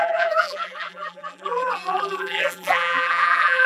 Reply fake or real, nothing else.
fake